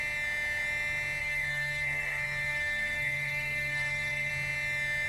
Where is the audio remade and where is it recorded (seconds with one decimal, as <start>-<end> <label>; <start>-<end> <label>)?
0.0-1.2 recorded; 1.2-4.3 remade; 4.3-5.1 recorded